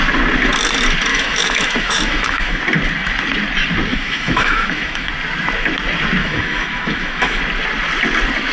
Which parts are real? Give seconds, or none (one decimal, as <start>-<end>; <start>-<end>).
0.0-1.1; 2.6-3.9; 5.1-6.2; 7.4-8.5